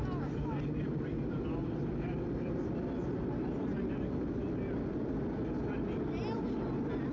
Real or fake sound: real